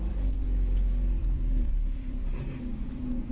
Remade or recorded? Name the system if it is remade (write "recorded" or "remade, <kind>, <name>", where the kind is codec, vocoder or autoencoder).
remade, vocoder, BigVGAN v2